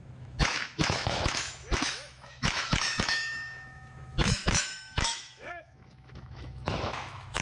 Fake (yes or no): yes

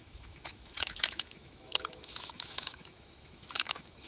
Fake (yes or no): yes